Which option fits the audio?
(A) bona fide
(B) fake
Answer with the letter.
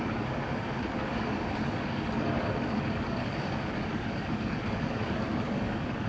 B